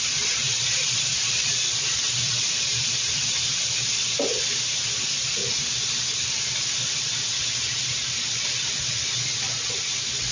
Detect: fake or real real